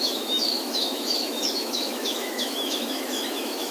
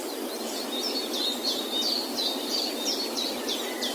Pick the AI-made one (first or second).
first